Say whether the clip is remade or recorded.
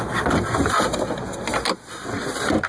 recorded